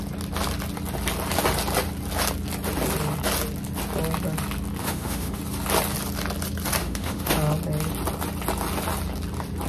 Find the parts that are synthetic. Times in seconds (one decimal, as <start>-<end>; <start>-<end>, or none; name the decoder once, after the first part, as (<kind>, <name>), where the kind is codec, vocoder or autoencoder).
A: 4.8-5.4 (autoencoder, DAC-VAE); 6.8-7.3